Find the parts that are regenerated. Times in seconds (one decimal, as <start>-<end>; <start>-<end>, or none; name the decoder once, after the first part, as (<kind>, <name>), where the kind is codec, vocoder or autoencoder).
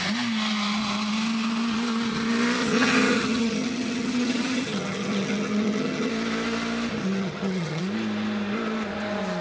2.6-6.1 (vocoder, HiFi-GAN); 7.0-7.8